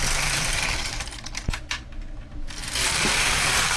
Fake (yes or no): yes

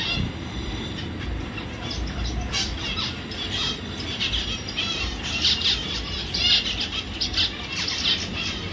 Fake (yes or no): yes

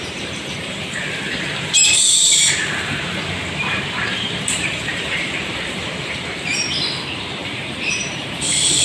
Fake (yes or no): yes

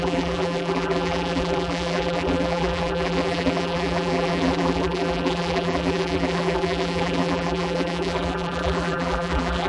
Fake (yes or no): yes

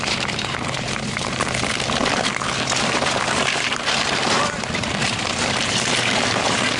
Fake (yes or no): yes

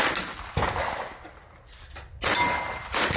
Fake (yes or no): no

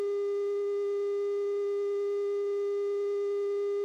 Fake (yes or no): no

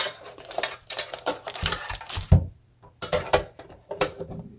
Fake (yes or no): yes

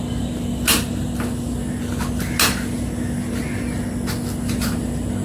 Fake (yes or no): no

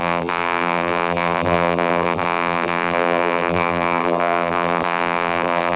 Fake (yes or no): yes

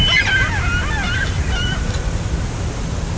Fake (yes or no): no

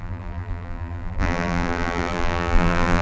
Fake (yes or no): yes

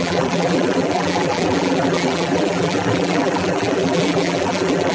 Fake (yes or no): yes